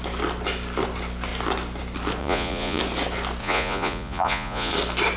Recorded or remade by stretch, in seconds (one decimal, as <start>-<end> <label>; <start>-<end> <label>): 0.0-2.2 recorded; 2.2-2.8 remade; 2.8-3.4 recorded; 3.4-4.7 remade; 4.7-5.2 recorded